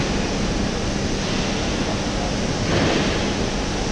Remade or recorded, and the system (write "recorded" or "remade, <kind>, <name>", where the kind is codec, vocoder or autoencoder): recorded